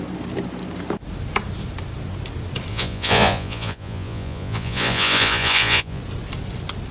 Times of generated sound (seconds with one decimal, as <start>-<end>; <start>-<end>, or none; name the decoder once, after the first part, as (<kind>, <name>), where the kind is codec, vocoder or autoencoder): 2.7-6.0 (vocoder, Vocos)